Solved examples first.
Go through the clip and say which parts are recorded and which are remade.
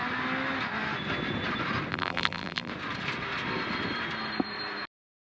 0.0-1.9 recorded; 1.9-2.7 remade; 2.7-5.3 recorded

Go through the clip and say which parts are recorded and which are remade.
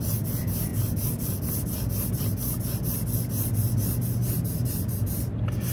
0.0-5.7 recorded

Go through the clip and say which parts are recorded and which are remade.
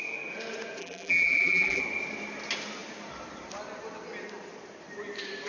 0.0-0.8 recorded; 0.8-1.8 remade; 1.8-5.5 recorded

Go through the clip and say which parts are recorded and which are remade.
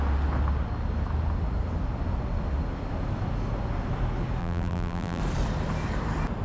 0.0-4.4 recorded; 4.4-5.2 remade; 5.2-6.4 recorded